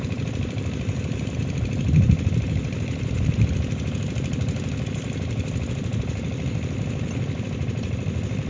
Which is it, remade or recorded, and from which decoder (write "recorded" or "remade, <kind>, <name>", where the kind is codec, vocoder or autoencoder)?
recorded